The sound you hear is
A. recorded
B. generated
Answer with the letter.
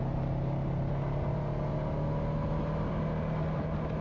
A